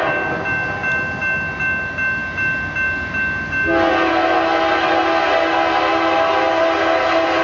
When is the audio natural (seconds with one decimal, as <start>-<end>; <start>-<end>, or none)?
0.0-7.4